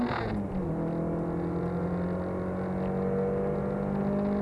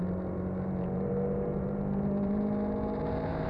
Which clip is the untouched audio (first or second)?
first